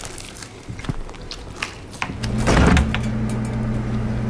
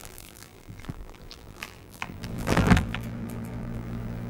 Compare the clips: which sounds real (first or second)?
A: first